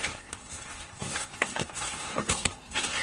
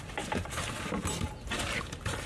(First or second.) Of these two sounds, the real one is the second